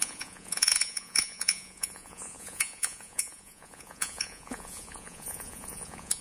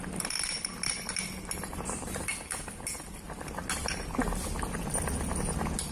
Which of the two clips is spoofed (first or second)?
first